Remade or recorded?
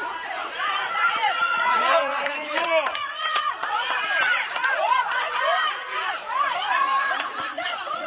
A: remade